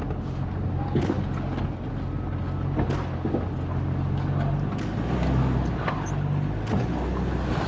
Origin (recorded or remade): recorded